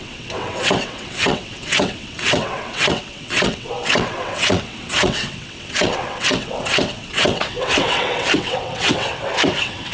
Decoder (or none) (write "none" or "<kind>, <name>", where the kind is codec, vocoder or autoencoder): vocoder, WaveNeXt